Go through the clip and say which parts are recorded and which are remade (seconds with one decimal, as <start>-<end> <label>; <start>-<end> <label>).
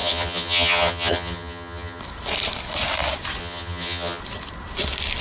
0.0-2.0 remade; 2.0-3.4 recorded; 3.4-4.2 remade; 4.2-5.2 recorded